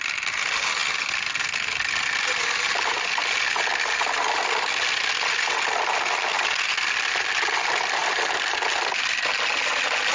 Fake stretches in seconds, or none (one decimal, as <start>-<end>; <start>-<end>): none